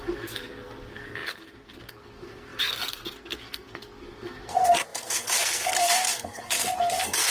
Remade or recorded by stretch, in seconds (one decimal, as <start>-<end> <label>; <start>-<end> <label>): 0.0-7.3 remade